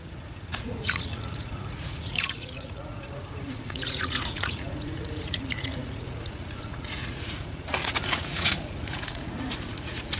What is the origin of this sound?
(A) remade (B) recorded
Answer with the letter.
A